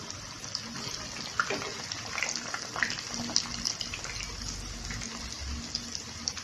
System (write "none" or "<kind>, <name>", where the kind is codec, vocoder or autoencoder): none